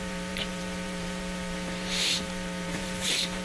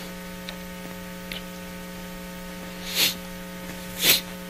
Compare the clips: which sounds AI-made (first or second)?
first